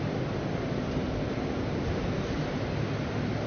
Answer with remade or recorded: recorded